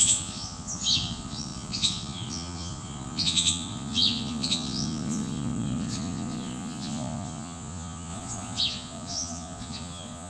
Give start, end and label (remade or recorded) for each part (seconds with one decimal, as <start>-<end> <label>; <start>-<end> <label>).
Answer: 0.0-10.3 remade